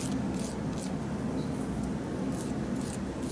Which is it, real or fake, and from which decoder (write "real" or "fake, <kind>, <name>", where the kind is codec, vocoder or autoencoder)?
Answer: real